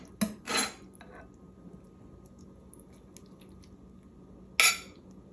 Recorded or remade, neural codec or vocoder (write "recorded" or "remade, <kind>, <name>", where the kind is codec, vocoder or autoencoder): recorded